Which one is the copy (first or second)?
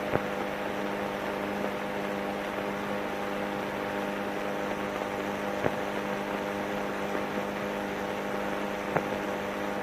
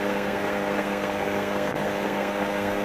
second